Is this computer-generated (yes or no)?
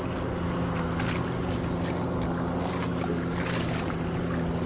no